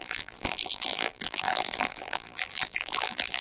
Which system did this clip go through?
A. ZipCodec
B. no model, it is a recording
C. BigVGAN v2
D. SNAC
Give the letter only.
C